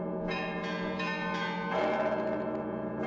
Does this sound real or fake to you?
fake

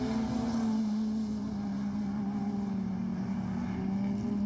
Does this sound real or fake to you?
real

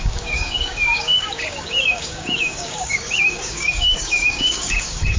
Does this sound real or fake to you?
fake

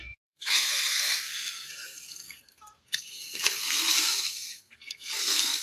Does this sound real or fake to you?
fake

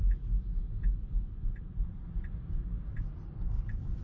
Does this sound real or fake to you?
real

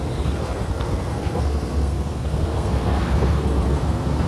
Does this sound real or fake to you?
fake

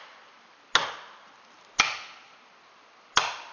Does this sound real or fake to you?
real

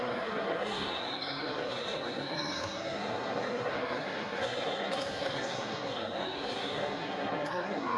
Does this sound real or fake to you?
fake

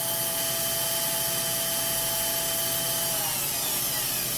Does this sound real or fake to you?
real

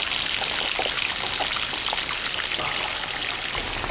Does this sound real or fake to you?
real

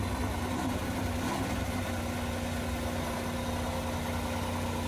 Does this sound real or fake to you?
real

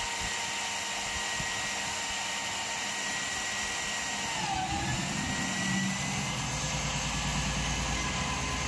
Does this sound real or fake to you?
real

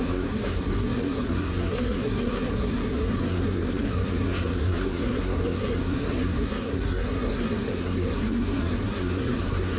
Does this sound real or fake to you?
fake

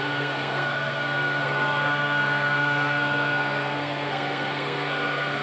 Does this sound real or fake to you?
fake